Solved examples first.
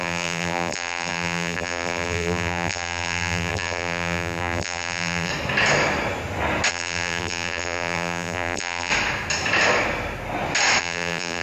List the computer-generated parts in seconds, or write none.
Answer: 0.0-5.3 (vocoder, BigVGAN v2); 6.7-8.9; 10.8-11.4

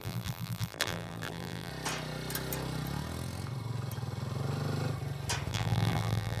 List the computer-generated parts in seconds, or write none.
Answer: 0.0-1.7 (vocoder, BigVGAN v2); 5.5-6.4

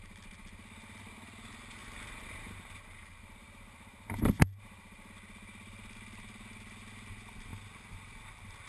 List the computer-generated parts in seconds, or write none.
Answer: 1.8-5.1 (vocoder, BigVGAN v2)

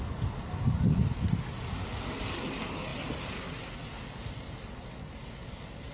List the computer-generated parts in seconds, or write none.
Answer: none